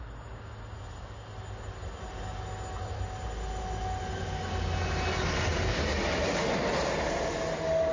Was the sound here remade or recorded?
recorded